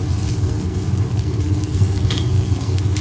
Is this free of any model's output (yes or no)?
no